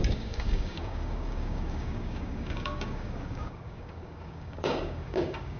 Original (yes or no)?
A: no